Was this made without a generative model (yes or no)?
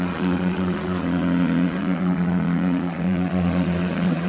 no